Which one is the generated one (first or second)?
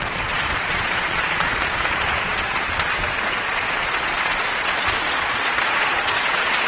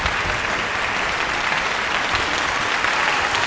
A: first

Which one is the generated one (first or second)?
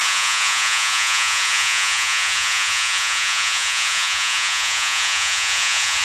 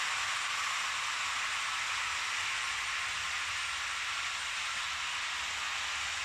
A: first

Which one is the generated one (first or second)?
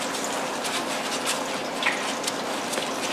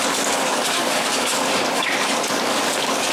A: second